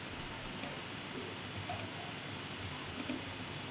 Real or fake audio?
real